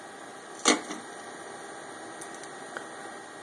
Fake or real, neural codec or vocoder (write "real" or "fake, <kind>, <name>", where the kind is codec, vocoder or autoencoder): real